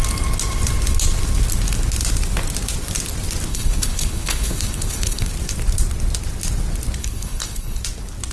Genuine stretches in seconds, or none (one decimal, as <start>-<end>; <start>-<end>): 0.0-3.5; 5.3-7.0; 7.8-8.3